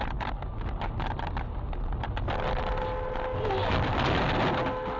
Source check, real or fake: real